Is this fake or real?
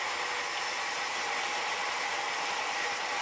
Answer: real